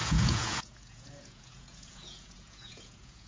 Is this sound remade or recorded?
remade